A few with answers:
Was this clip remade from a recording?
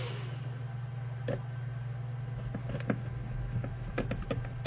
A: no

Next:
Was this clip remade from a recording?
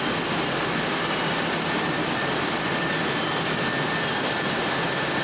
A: no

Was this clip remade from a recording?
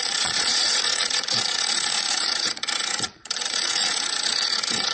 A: yes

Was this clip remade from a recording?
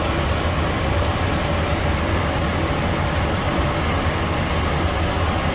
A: no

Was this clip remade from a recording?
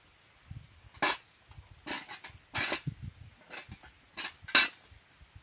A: no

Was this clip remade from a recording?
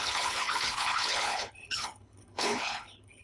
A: yes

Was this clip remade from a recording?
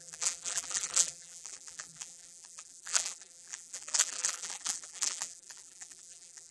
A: yes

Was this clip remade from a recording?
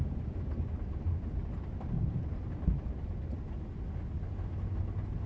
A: no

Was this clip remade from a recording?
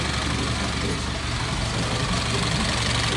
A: no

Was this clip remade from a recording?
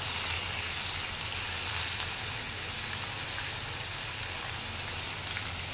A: no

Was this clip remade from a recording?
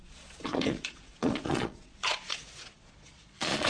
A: yes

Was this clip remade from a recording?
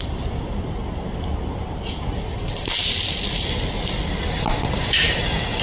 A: yes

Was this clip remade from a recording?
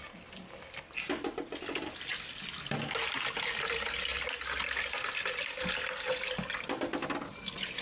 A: no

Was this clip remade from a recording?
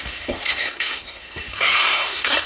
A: yes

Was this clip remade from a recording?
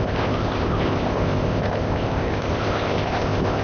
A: yes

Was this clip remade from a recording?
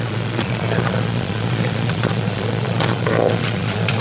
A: yes